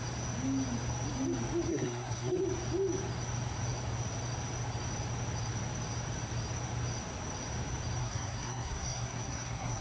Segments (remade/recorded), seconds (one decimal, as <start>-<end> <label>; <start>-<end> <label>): 0.0-1.7 recorded; 1.7-2.4 remade; 2.4-8.0 recorded; 8.0-9.8 remade